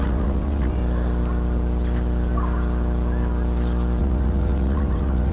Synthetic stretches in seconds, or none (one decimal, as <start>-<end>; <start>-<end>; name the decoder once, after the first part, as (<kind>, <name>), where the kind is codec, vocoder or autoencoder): 0.0-0.8 (vocoder, WaveNeXt); 4.0-5.3